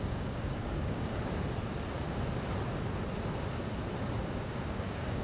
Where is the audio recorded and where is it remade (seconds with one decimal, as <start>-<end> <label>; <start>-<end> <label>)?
0.0-1.1 remade; 1.1-4.2 recorded; 4.2-5.2 remade